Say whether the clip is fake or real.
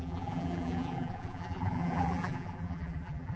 fake